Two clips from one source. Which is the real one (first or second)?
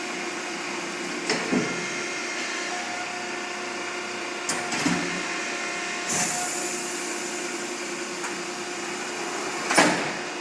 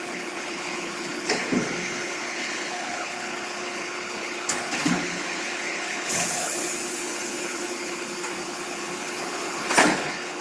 first